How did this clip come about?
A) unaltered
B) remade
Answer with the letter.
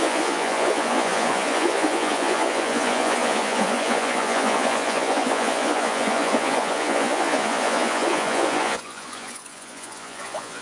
B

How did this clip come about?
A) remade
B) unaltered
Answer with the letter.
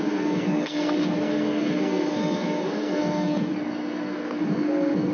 A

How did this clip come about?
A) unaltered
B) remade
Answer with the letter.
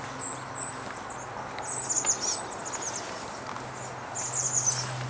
A